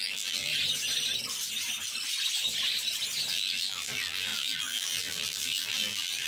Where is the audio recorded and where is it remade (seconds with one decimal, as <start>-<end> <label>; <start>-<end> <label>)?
0.0-0.5 remade; 0.5-3.3 recorded; 3.3-6.3 remade